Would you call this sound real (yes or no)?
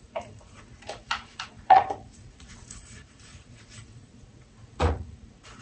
no